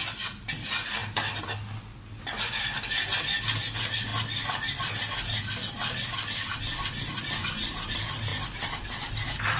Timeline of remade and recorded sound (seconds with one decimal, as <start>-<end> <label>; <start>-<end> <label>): 0.0-9.6 recorded